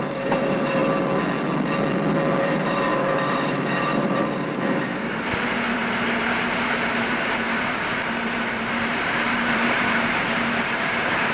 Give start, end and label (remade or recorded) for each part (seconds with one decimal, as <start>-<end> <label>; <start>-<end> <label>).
0.0-0.8 remade; 0.8-2.4 recorded; 2.4-11.3 remade